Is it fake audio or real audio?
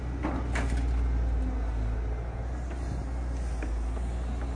real